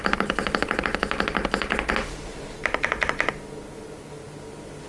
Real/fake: real